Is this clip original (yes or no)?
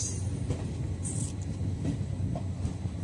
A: no